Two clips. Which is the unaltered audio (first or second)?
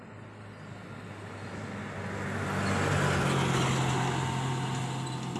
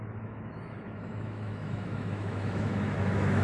first